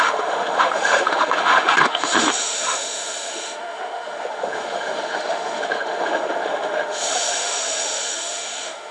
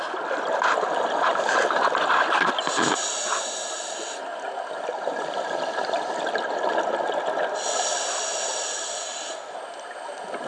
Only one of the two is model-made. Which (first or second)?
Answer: first